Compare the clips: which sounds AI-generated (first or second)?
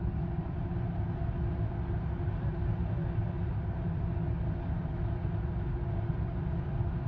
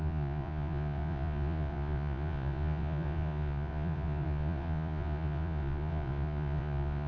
second